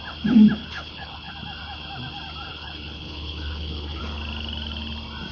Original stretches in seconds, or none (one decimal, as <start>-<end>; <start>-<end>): 0.0-0.6; 1.3-2.5; 4.0-5.3